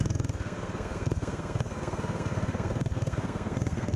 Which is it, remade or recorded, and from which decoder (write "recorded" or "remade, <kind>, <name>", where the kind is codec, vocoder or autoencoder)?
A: remade, codec, SNAC